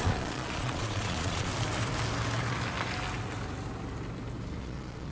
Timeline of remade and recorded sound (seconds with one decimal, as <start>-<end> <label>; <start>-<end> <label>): 0.0-1.5 remade; 1.5-4.6 recorded; 4.6-5.1 remade